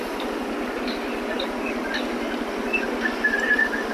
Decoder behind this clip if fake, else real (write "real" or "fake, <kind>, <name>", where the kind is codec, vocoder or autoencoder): real